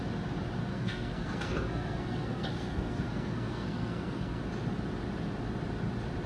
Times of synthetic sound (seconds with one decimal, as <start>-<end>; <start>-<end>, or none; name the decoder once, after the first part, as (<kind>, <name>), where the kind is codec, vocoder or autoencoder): 0.7-4.4 (codec, SNAC)